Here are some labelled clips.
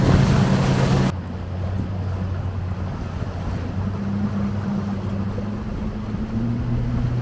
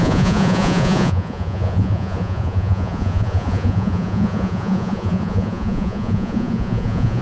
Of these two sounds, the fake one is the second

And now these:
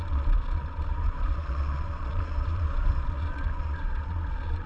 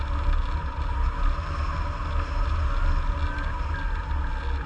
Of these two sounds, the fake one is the first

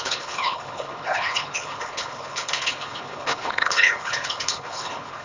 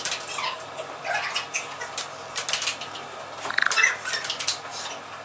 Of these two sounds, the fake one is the first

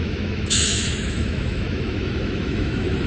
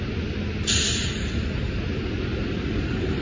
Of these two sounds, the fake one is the first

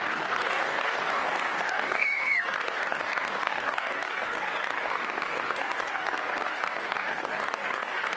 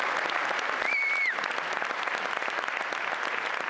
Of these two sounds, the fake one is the first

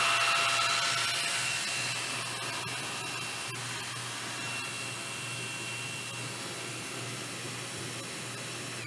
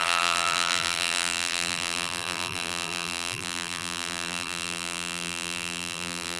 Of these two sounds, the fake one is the second